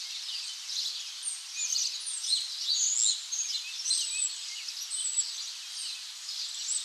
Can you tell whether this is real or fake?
real